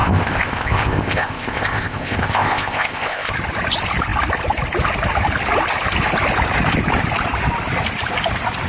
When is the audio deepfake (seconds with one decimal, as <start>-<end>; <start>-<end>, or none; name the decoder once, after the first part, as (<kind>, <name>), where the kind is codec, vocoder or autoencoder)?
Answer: 0.0-3.3 (codec, ZipCodec)